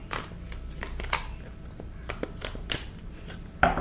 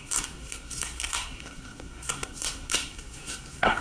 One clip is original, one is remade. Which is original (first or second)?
first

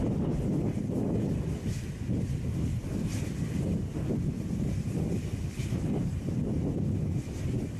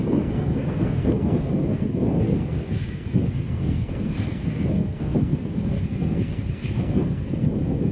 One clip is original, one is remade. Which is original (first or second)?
first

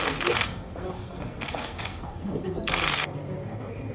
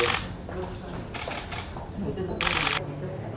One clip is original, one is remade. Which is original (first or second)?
second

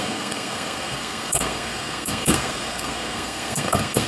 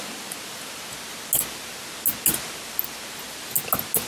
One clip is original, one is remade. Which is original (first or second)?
second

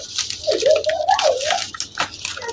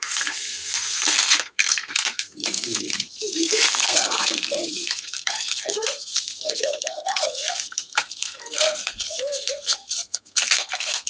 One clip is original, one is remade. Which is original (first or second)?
first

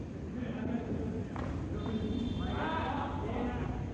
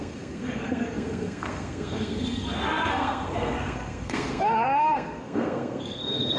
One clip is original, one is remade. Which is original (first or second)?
first